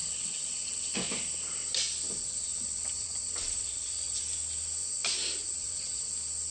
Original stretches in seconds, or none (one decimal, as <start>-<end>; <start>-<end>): 0.9-2.2; 4.2-5.4; 6.1-6.5